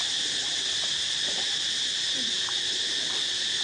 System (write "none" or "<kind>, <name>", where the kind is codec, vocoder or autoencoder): none